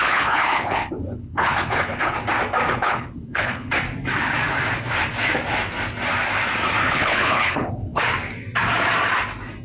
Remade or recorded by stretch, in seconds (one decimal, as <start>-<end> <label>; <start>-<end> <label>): 0.0-2.2 remade; 2.2-2.7 recorded; 2.7-3.7 remade; 3.7-6.8 recorded; 6.8-8.0 remade; 8.0-9.6 recorded